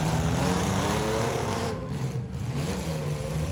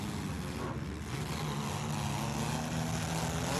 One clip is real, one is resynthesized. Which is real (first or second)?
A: second